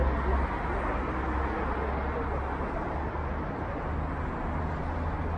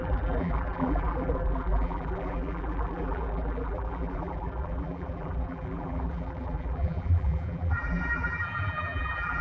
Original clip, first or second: first